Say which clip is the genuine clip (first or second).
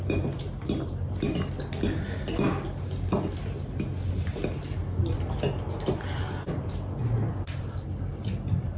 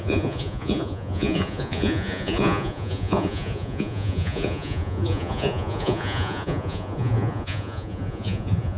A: first